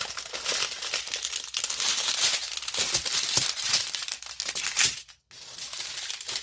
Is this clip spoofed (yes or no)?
no